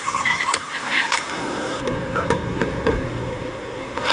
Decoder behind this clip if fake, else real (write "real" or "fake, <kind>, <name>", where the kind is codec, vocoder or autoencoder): fake, codec, SNAC